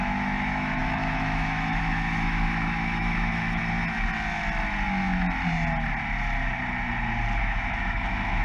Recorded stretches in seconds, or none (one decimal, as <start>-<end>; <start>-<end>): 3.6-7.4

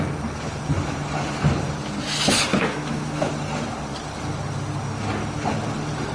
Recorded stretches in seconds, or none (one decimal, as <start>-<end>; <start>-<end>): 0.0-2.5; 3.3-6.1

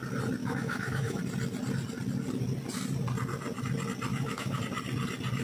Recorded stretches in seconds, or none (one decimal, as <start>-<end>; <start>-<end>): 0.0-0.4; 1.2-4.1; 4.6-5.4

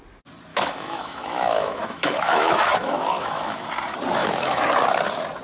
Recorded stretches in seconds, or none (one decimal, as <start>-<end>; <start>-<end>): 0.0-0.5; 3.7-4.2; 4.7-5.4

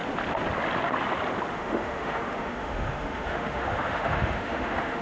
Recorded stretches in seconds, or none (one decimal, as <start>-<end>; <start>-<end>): 0.0-1.5

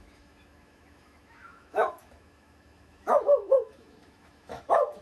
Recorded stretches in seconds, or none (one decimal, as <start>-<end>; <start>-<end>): none

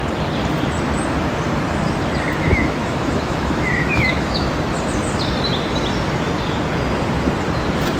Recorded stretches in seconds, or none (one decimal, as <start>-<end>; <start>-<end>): 0.0-2.5; 4.5-8.0